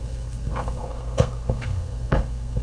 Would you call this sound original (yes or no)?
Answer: no